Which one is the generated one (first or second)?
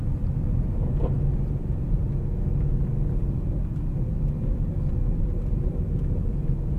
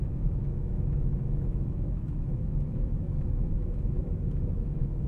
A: second